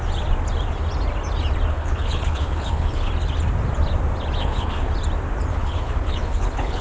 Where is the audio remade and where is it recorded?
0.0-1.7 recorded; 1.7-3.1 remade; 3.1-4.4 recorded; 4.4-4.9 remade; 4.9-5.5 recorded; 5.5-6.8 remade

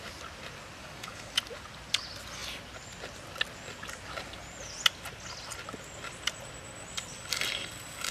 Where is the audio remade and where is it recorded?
0.0-0.8 recorded; 0.8-1.3 remade; 1.3-8.1 recorded

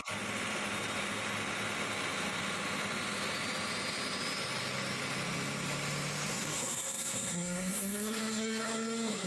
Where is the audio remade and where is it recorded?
0.0-6.3 recorded; 6.3-9.3 remade

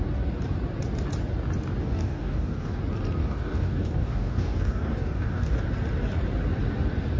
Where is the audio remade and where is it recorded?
0.0-1.8 recorded; 1.8-2.8 remade; 2.8-3.2 recorded; 3.2-5.6 remade; 5.6-7.2 recorded

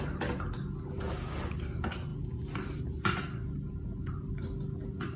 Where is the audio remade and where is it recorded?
0.0-5.2 recorded